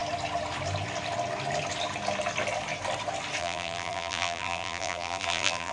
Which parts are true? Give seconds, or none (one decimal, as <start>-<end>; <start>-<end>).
0.0-3.4